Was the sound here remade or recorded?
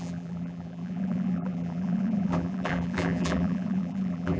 remade